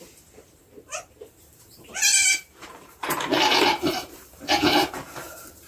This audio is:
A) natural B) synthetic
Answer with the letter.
B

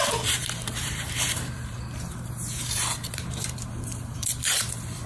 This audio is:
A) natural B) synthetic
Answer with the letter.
B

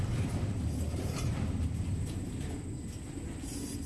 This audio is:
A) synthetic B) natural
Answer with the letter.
B